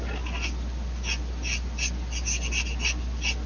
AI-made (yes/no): no